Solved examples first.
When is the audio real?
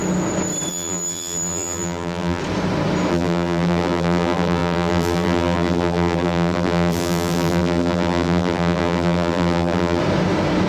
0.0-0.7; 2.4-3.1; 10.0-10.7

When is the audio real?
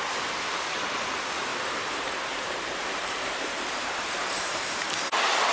0.0-1.5; 4.8-5.5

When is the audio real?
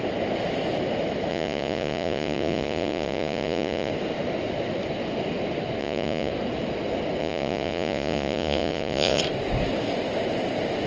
0.0-1.3; 3.9-5.8; 6.3-7.2; 9.2-10.9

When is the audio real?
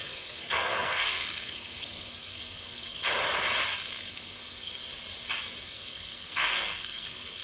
3.0-4.1; 4.8-5.6